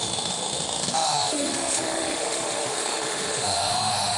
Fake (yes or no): yes